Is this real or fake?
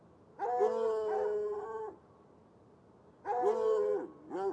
real